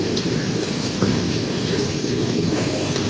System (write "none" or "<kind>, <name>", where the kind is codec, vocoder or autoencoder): codec, DAC